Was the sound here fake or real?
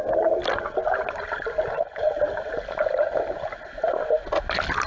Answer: real